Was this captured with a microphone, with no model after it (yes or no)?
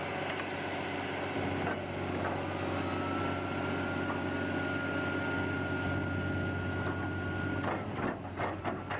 yes